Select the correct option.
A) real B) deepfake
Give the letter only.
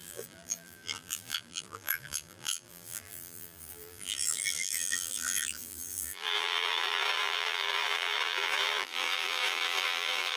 B